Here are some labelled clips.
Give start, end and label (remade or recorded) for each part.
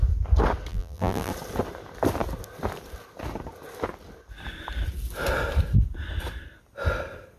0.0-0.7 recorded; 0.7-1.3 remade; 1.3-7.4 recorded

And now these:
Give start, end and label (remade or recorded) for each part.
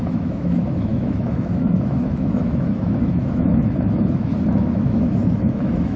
0.0-6.0 remade